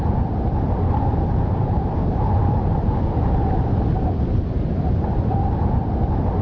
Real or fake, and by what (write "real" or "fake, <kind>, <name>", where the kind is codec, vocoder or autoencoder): real